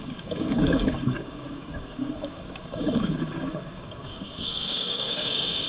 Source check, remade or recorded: remade